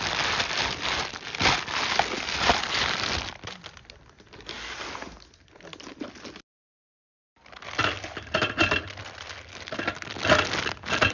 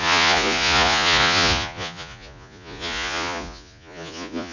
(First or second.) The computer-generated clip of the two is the second